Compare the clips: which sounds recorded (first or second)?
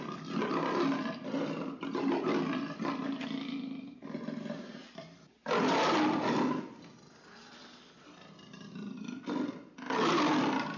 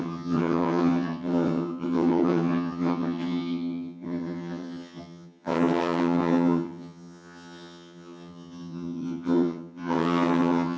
first